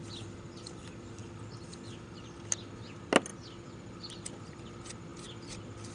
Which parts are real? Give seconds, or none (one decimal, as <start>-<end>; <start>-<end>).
0.0-5.9